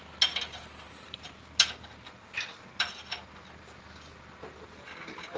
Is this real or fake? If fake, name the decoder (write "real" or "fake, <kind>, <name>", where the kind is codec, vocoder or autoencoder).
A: real